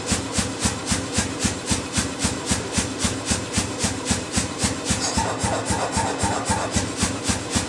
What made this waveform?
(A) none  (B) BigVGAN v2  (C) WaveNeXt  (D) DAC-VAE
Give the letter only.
B